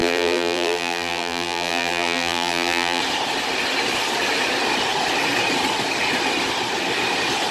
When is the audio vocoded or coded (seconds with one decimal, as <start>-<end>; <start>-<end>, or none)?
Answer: 0.0-3.0